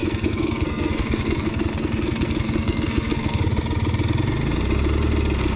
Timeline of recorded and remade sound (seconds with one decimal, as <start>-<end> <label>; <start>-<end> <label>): 0.0-3.4 remade; 3.4-5.6 recorded